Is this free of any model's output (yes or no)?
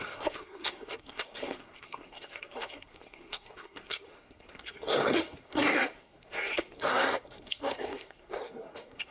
no